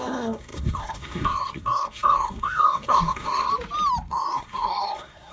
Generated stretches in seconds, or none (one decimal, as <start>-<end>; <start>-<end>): 0.0-3.5; 4.1-5.3